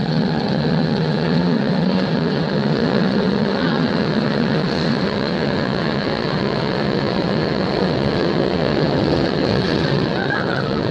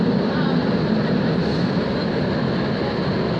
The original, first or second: second